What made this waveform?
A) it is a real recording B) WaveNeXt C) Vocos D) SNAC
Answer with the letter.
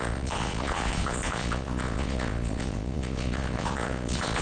C